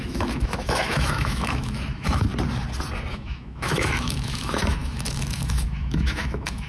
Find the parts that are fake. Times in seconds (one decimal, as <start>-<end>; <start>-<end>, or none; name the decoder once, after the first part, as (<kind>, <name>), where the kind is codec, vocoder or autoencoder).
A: 0.0-2.3 (autoencoder, DAC-VAE); 3.1-6.7